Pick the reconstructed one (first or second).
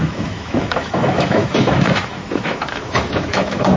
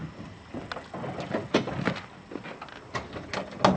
first